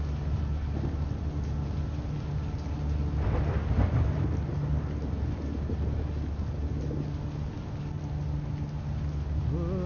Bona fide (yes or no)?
yes